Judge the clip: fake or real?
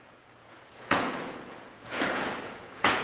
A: fake